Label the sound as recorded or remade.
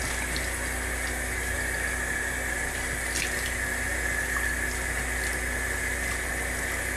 recorded